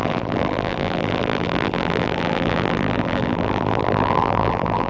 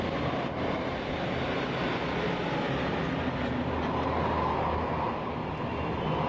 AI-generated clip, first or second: first